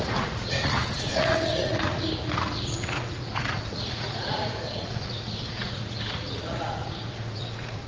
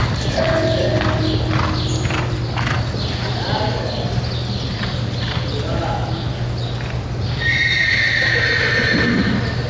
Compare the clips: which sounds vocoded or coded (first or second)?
first